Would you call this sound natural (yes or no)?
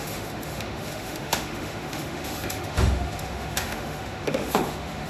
no